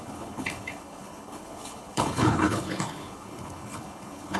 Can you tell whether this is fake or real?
fake